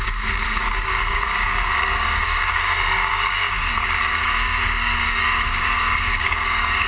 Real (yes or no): no